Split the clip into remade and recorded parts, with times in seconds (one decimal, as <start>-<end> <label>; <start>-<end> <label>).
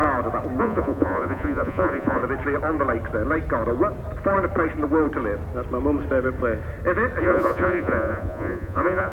0.0-0.6 recorded; 0.6-2.2 remade; 2.2-7.2 recorded; 7.2-9.1 remade